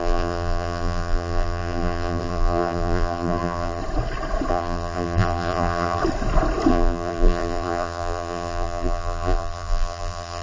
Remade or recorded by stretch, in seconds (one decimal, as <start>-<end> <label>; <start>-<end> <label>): 0.0-3.8 remade; 3.8-4.5 recorded; 4.5-6.0 remade; 6.0-6.7 recorded; 6.7-10.4 remade